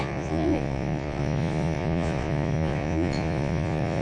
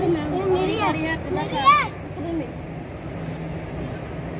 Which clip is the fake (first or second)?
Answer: first